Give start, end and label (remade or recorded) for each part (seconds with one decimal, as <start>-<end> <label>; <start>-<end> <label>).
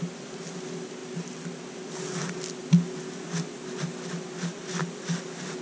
0.0-5.6 recorded